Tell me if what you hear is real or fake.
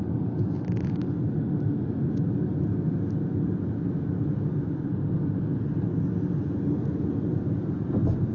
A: real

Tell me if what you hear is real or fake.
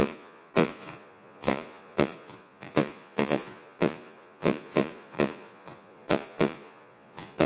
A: fake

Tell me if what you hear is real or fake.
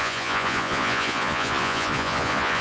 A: fake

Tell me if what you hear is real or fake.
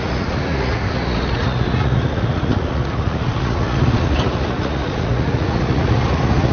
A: fake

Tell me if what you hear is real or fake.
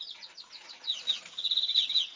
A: fake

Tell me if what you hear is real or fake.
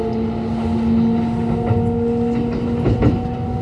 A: real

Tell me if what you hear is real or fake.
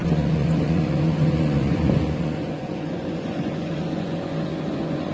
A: fake